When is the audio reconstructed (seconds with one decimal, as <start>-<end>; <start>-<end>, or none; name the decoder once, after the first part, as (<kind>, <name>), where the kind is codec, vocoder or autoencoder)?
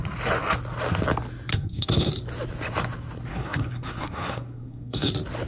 1.5-2.1 (codec, SNAC); 3.3-5.1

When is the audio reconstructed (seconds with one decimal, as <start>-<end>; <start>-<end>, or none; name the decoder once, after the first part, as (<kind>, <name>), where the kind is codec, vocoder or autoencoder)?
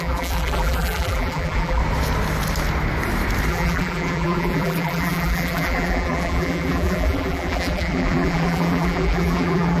0.0-1.8 (vocoder, BigVGAN v2); 3.5-9.8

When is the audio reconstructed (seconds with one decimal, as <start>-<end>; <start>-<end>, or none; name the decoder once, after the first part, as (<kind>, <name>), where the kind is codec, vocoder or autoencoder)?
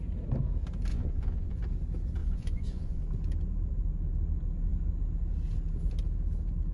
0.9-1.6 (vocoder, Vocos); 2.2-3.0